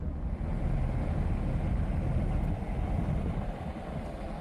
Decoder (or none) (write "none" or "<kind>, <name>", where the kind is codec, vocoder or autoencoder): none